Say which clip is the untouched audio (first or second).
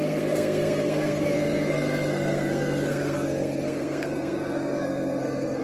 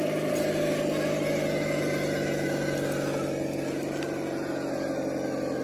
second